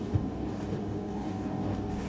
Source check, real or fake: fake